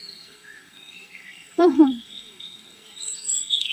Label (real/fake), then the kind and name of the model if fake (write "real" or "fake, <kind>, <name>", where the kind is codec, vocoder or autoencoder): fake, codec, SNAC